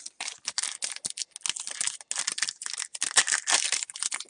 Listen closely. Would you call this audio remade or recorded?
recorded